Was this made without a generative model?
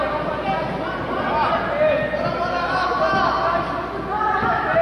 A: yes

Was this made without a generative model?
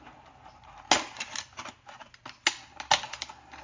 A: yes